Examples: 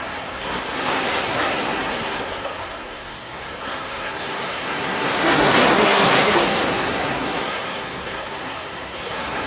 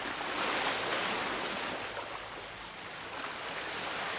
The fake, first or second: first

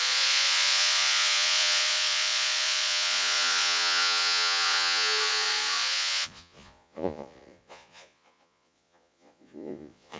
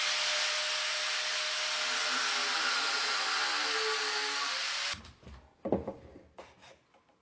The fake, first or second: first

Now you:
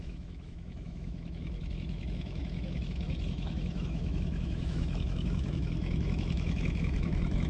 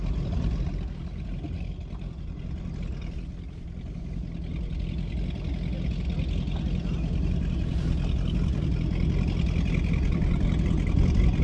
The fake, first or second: first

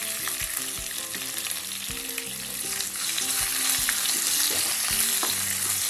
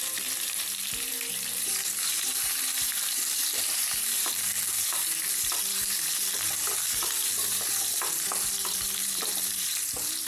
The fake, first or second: second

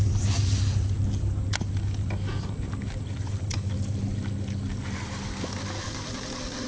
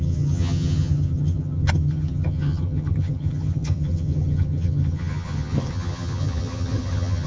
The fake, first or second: second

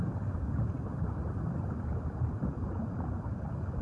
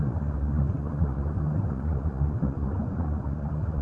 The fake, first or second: second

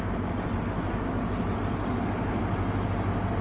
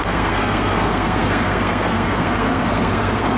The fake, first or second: second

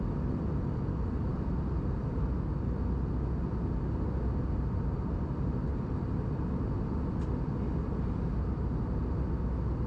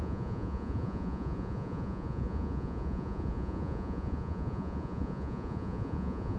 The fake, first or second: second